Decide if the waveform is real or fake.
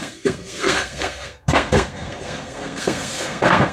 fake